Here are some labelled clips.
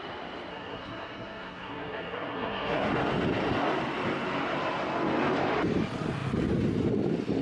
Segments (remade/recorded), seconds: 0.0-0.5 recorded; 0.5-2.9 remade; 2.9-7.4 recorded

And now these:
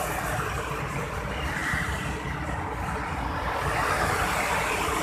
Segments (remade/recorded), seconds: 0.0-5.0 recorded

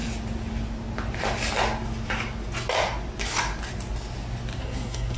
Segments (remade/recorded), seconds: 0.0-4.6 recorded; 4.6-5.2 remade

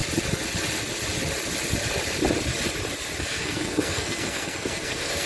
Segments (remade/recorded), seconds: 0.0-3.2 recorded; 3.2-5.3 remade

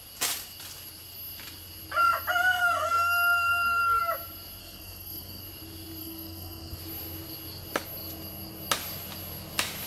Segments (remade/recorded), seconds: 0.0-2.6 recorded; 2.6-4.0 remade; 4.0-4.6 recorded; 4.6-5.4 remade; 5.4-6.0 recorded; 6.0-6.8 remade; 6.8-9.9 recorded

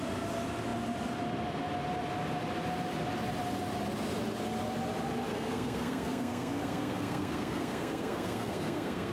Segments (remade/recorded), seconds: 0.0-5.3 recorded; 5.3-9.1 remade

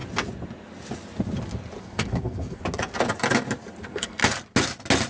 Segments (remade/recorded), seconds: 0.0-1.8 recorded; 1.8-2.6 remade; 2.6-3.8 recorded; 3.8-4.2 remade; 4.2-5.1 recorded

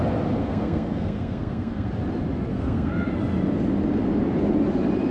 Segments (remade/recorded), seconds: 0.0-0.4 recorded; 0.4-1.9 remade; 1.9-2.5 recorded; 2.5-3.1 remade; 3.1-5.1 recorded